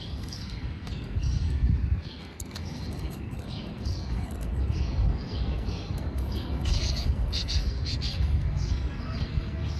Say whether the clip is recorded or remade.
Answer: remade